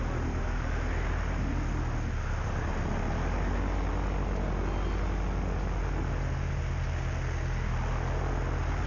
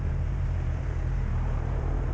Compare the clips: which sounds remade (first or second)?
second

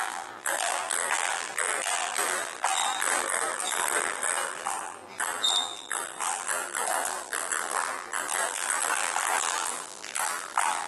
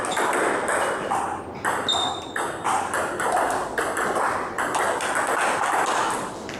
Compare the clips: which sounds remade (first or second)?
first